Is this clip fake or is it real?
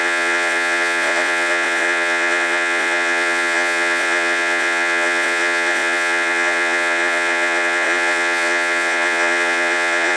fake